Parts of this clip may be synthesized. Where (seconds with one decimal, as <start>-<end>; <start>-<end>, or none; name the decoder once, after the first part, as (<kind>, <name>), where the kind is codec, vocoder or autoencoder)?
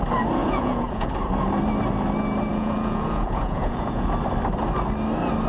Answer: 0.4-1.1 (vocoder, Vocos); 2.5-4.1